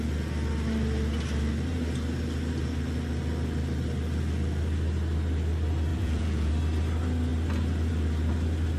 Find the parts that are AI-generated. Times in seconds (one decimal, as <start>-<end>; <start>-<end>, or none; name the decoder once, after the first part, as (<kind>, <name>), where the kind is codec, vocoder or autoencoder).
5.9-6.5 (vocoder, Vocos)